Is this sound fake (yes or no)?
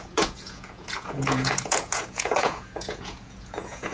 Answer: yes